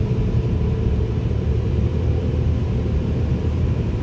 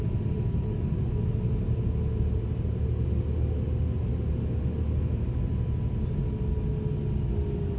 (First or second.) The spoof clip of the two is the first